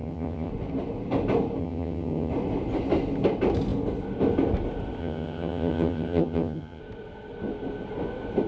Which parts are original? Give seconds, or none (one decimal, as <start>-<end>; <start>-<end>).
0.5-1.6; 2.3-5.0; 6.8-8.5